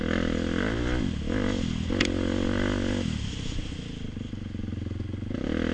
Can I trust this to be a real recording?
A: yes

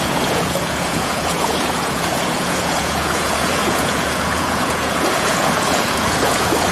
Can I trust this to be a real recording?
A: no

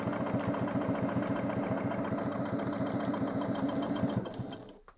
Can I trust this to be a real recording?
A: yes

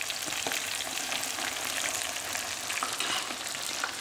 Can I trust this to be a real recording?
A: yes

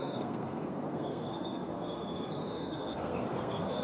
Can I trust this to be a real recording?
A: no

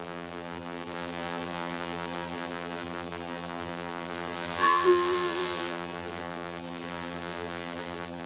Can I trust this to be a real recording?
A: no